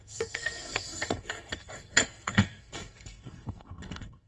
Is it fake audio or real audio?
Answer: fake